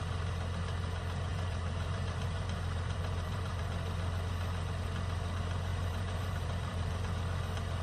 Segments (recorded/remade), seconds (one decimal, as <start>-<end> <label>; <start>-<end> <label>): 0.0-1.3 recorded; 1.3-3.6 remade; 3.6-5.7 recorded; 5.7-7.1 remade; 7.1-7.8 recorded